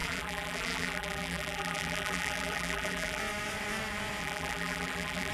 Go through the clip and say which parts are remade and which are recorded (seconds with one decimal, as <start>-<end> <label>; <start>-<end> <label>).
0.0-3.2 remade; 3.2-4.2 recorded; 4.2-5.3 remade